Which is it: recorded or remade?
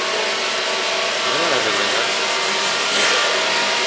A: recorded